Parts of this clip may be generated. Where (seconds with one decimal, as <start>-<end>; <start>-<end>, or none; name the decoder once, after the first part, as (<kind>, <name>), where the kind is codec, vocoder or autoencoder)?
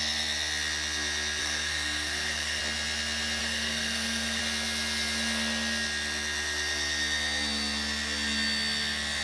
1.4-2.6 (codec, SNAC); 3.4-4.4